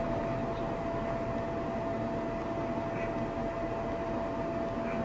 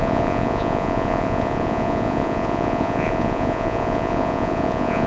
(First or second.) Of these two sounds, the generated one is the second